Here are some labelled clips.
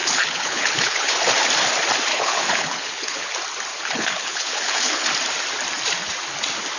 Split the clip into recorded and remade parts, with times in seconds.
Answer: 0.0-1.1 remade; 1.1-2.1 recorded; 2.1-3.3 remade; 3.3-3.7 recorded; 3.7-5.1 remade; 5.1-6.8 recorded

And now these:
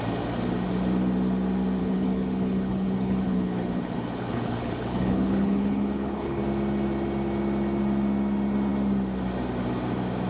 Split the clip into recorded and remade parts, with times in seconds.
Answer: 0.0-1.8 recorded; 1.8-6.4 remade; 6.4-10.3 recorded

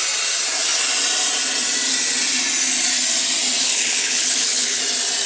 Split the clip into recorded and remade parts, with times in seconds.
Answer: 0.0-3.6 recorded; 3.6-4.8 remade; 4.8-5.3 recorded

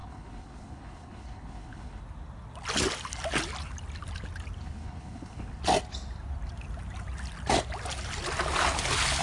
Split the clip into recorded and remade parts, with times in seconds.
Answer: 0.0-2.0 remade; 2.0-4.6 recorded; 4.6-5.6 remade; 5.6-9.2 recorded

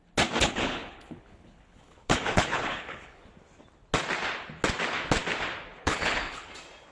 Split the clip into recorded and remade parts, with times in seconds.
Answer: 0.0-0.4 recorded; 0.4-3.3 remade; 3.3-5.8 recorded; 5.8-6.5 remade; 6.5-6.9 recorded

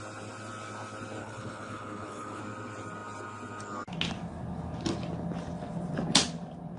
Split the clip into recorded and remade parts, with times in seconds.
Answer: 0.0-1.2 recorded; 1.2-2.4 remade; 2.4-6.8 recorded

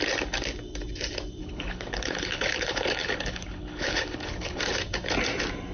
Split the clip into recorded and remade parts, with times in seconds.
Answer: 0.0-1.4 recorded; 1.4-4.6 remade; 4.6-5.7 recorded

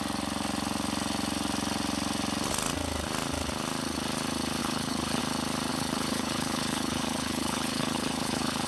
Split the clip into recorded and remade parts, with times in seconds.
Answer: 0.0-4.6 recorded; 4.6-5.2 remade; 5.2-5.7 recorded; 5.7-8.7 remade